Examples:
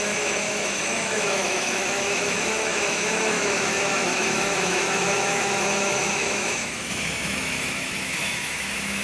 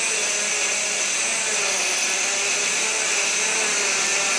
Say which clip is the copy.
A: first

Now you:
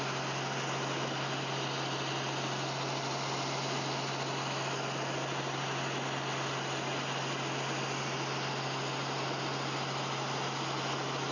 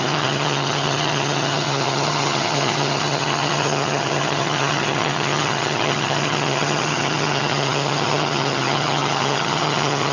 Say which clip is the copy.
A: second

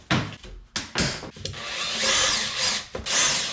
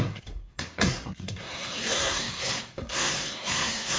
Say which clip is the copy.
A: second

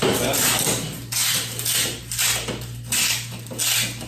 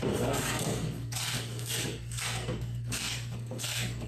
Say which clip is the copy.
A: second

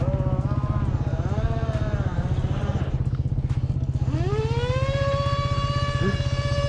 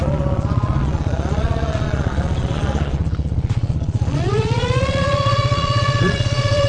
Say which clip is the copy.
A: second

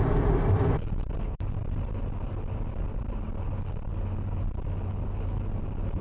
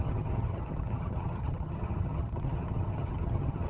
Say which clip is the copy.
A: second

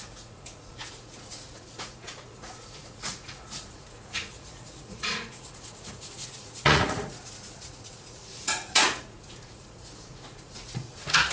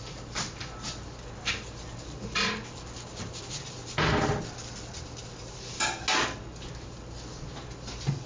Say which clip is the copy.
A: first